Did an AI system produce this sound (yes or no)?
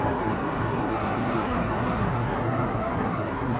yes